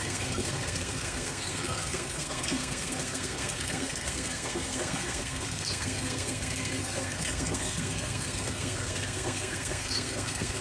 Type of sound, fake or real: fake